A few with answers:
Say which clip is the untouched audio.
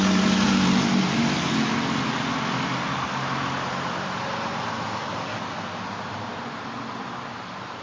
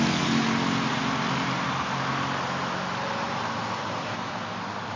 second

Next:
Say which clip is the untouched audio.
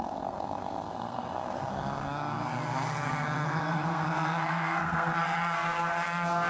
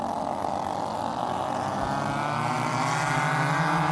second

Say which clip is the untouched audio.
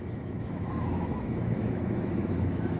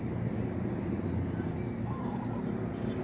second